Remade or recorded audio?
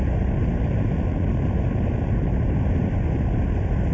recorded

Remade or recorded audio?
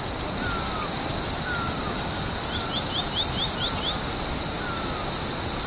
recorded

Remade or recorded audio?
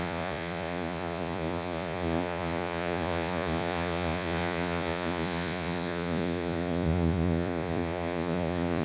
remade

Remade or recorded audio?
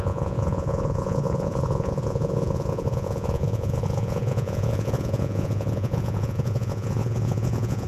remade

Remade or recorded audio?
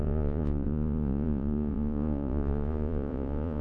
remade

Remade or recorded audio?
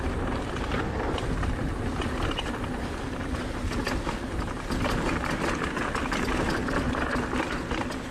recorded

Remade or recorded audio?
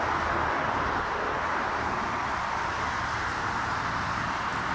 recorded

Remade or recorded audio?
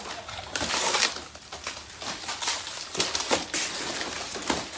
recorded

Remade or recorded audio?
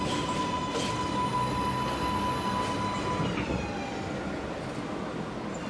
recorded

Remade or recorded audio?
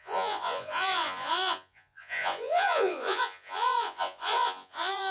remade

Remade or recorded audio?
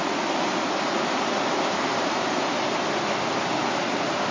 recorded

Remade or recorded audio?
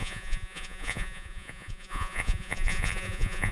remade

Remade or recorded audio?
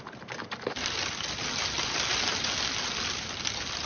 recorded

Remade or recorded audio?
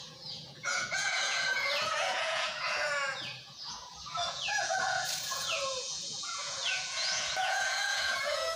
remade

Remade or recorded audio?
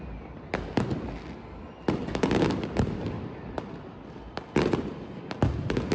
recorded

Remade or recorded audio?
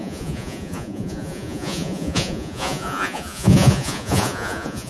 remade